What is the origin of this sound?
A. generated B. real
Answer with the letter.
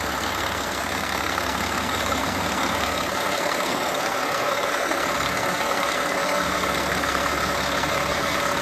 A